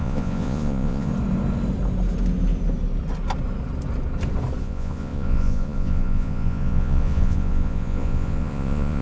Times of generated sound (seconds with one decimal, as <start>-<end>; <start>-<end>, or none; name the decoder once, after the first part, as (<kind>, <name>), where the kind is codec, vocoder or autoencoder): 0.0-1.1 (vocoder, Vocos); 4.6-9.0